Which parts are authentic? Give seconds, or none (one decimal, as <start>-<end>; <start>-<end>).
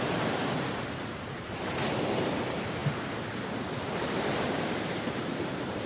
2.8-3.9